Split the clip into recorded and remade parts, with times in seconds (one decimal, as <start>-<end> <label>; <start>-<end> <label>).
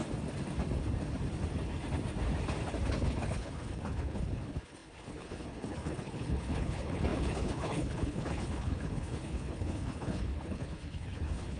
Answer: 0.0-2.9 recorded; 2.9-11.6 remade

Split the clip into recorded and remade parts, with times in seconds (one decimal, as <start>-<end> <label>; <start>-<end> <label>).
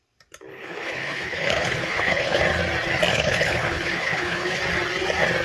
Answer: 0.0-0.5 recorded; 0.5-2.4 remade; 2.4-3.1 recorded; 3.1-4.6 remade; 4.6-5.4 recorded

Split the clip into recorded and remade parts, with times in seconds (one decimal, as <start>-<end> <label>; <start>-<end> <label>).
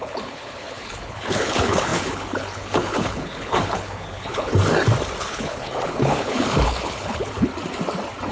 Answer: 0.0-4.5 remade; 4.5-5.2 recorded; 5.2-7.5 remade; 7.5-8.3 recorded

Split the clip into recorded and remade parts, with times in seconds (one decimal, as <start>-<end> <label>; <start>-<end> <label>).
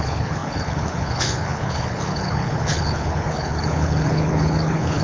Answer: 0.0-5.0 remade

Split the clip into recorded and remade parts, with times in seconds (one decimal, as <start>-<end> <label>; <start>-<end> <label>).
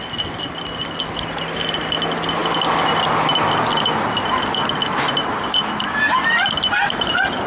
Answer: 0.0-7.5 recorded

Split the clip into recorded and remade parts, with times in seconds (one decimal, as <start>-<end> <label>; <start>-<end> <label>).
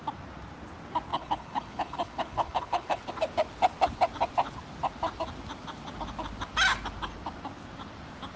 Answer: 0.0-1.1 recorded; 1.1-3.1 remade; 3.1-8.4 recorded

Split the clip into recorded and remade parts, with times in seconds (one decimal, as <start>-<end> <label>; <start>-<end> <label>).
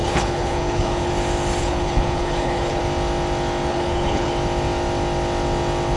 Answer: 0.0-1.1 remade; 1.1-1.6 recorded; 1.6-2.8 remade; 2.8-3.7 recorded; 3.7-4.3 remade; 4.3-6.0 recorded